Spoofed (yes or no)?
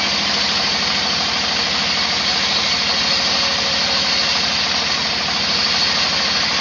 no